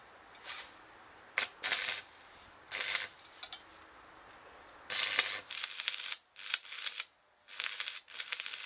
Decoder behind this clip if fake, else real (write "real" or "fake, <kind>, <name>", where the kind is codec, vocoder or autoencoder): real